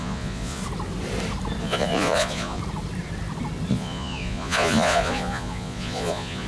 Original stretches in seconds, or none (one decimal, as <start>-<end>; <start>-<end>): 0.6-1.6; 2.6-3.7